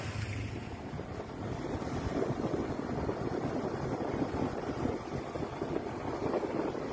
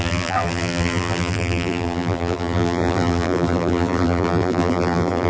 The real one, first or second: first